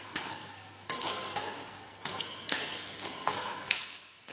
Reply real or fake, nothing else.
fake